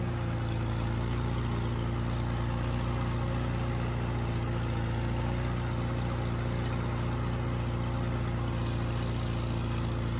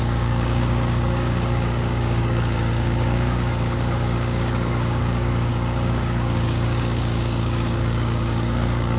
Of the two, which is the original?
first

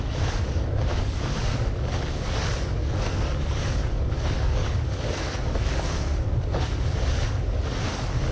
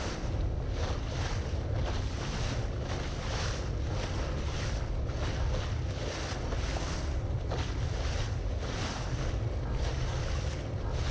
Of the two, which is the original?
second